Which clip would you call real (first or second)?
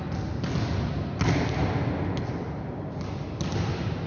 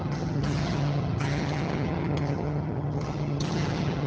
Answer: first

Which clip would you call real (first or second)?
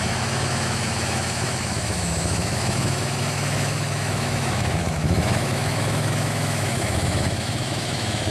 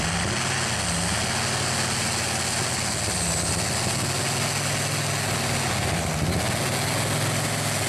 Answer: second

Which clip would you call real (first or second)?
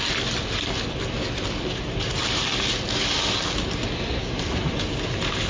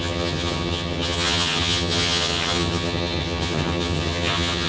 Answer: first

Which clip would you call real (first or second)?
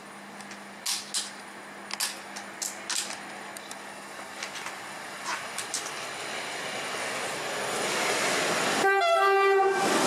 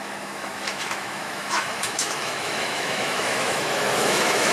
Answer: first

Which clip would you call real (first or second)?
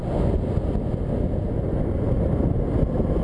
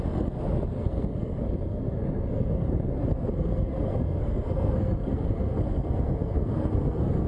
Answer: first